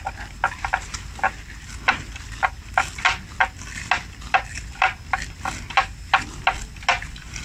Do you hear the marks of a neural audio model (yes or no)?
no